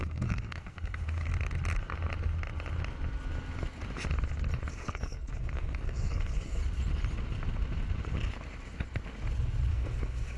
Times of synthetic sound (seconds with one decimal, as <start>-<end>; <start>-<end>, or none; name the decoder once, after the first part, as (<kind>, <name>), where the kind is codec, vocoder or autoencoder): 0.0-1.3 (codec, SNAC); 4.7-6.6; 9.7-10.4

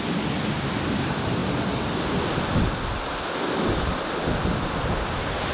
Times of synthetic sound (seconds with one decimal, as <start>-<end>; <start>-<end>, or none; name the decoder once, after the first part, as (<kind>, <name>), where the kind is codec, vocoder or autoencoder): none

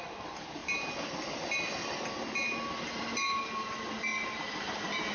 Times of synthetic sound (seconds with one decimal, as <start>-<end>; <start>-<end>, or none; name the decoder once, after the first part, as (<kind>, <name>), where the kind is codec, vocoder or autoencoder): none

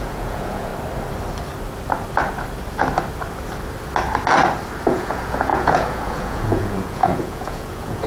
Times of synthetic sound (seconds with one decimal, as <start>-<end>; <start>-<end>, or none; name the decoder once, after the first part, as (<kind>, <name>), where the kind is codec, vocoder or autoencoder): 0.0-0.7 (vocoder, Vocos); 4.8-8.1

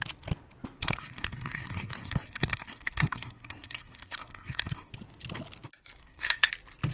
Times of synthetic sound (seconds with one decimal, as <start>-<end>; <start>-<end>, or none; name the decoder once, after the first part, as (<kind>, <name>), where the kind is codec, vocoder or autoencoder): 0.8-4.9 (codec, SNAC); 6.0-6.5

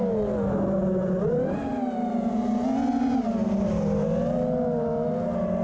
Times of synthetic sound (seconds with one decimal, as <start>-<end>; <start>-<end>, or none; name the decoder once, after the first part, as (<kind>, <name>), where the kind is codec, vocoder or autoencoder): none

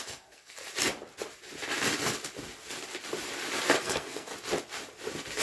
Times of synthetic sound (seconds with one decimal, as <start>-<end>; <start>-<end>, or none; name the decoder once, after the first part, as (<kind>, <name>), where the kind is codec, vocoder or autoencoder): 0.0-0.6 (codec, SNAC); 3.8-4.3

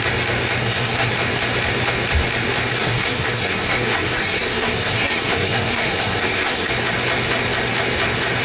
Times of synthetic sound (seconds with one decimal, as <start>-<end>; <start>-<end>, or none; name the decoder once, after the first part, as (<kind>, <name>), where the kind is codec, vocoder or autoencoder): 0.6-1.1 (codec, SNAC); 2.7-6.7